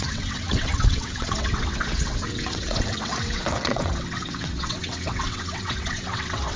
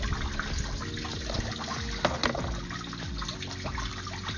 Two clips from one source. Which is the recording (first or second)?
second